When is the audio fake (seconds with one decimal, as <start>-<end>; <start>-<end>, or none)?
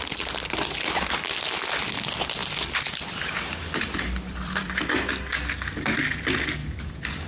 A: 2.4-4.8; 6.6-7.3